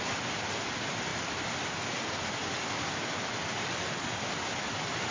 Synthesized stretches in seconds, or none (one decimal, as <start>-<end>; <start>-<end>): none

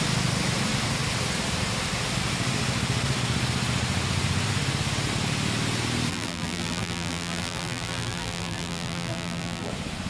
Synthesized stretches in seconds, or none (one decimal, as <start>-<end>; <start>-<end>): 6.1-9.7

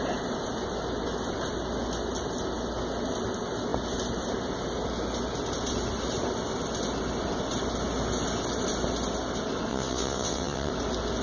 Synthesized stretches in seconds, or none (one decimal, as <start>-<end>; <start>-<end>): 9.7-10.7

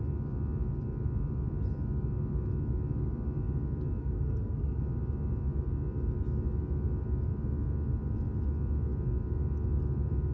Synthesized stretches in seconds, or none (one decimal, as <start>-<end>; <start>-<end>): 4.0-4.8

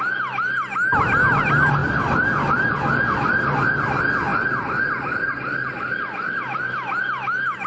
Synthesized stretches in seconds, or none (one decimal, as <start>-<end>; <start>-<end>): none